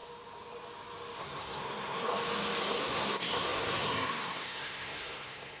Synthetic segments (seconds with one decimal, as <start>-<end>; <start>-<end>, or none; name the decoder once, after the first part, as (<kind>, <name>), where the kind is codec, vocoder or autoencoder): 1.2-2.1 (codec, SNAC); 2.6-5.6

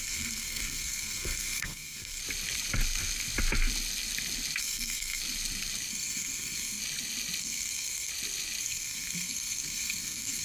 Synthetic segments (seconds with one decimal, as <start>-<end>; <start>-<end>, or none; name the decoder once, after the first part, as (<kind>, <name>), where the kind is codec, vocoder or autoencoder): 0.0-2.2 (codec, SNAC); 4.6-5.2; 5.9-6.8; 7.4-8.1; 8.6-10.4

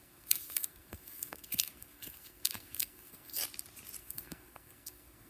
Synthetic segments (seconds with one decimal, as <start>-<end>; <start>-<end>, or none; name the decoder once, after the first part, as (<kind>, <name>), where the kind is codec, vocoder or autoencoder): 0.0-3.4 (codec, SNAC); 4.0-5.3

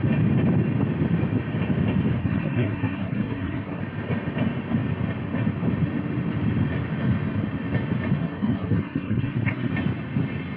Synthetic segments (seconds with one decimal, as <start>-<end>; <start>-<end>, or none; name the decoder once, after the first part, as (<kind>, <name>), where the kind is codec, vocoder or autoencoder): 2.2-3.8 (codec, SNAC); 8.2-9.7